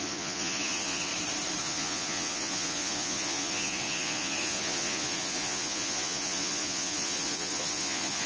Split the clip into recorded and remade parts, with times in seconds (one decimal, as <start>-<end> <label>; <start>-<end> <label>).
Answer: 0.0-1.1 remade; 1.1-1.6 recorded; 1.6-8.3 remade

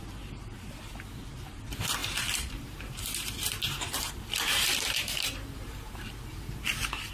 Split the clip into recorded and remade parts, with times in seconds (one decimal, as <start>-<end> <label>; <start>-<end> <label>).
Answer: 0.0-2.0 recorded; 2.0-6.1 remade; 6.1-7.1 recorded

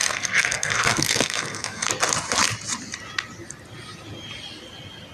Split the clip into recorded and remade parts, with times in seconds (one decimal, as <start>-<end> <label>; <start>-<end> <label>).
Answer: 0.0-1.9 remade; 1.9-5.1 recorded